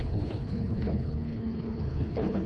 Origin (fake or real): fake